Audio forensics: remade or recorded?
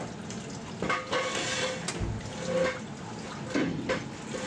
recorded